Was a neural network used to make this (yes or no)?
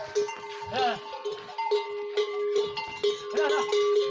no